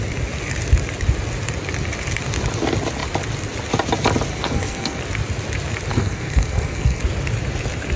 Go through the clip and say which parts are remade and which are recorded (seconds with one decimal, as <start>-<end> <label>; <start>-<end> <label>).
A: 0.0-4.3 recorded; 4.3-5.0 remade; 5.0-5.9 recorded; 5.9-7.0 remade; 7.0-8.0 recorded